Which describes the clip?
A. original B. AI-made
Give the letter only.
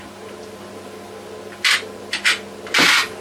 A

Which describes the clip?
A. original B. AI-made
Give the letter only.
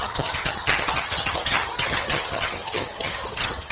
B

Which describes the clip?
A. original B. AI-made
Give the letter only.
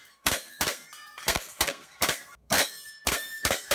B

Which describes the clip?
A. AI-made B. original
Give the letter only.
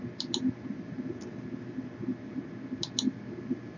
B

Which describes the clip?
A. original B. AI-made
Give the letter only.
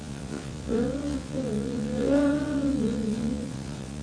B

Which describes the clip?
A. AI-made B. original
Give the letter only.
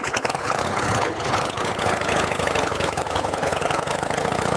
A